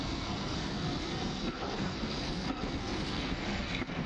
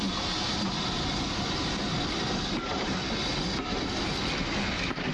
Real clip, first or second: second